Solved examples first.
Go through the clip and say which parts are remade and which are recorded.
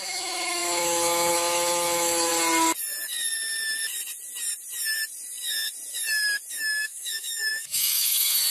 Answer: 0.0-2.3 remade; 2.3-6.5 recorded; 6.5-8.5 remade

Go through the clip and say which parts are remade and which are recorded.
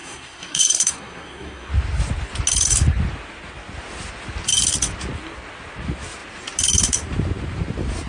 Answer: 0.0-1.7 remade; 1.7-8.1 recorded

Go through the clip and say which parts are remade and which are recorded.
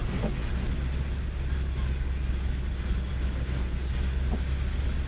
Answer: 0.0-5.1 recorded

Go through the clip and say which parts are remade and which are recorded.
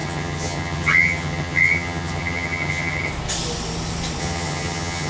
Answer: 0.0-3.1 remade; 3.1-4.2 recorded; 4.2-5.1 remade